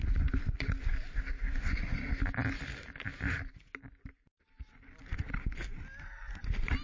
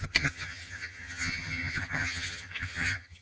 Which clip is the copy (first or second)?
second